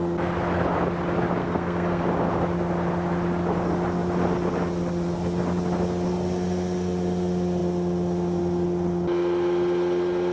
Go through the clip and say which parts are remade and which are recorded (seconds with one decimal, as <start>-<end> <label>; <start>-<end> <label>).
0.0-1.4 recorded; 1.4-2.0 remade; 2.0-10.3 recorded

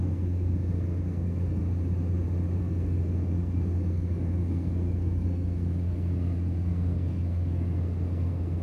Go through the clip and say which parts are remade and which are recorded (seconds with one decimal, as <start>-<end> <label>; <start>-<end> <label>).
0.0-1.6 remade; 1.6-2.6 recorded; 2.6-8.6 remade

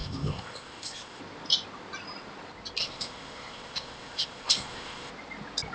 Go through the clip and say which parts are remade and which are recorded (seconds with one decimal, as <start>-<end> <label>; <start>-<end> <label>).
0.0-1.2 remade; 1.2-2.8 recorded; 2.8-5.1 remade; 5.1-5.7 recorded

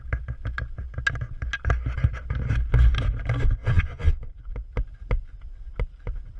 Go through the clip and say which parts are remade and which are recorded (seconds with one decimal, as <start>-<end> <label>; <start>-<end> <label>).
0.0-3.6 recorded; 3.6-4.3 remade; 4.3-6.4 recorded

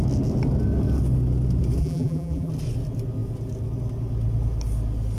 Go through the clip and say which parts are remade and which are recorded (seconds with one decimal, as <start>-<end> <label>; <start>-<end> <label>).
0.0-1.8 recorded; 1.8-2.5 remade; 2.5-5.2 recorded

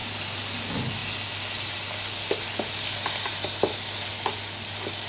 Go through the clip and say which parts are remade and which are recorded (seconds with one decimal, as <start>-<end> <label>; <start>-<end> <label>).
0.0-5.1 recorded

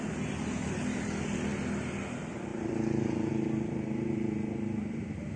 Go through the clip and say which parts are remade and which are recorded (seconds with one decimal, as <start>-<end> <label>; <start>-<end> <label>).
0.0-2.5 recorded; 2.5-3.3 remade; 3.3-5.4 recorded

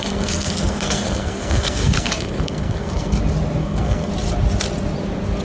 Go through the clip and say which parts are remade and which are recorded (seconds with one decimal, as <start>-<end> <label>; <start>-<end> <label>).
0.0-3.2 remade; 3.2-3.6 recorded; 3.6-4.1 remade; 4.1-5.4 recorded